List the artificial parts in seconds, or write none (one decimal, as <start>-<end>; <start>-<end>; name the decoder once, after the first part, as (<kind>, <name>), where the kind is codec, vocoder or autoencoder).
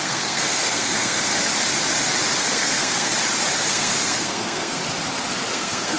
0.0-1.3 (codec, SNAC); 2.4-3.1; 3.7-4.8; 5.5-6.0